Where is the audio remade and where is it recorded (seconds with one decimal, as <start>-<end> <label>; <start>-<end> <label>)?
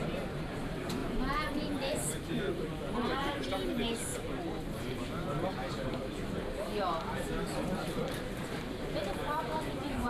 0.0-4.1 remade; 4.1-5.7 recorded; 5.7-10.1 remade